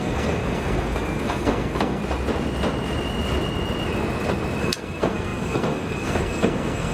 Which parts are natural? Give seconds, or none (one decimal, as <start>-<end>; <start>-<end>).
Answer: 2.0-4.6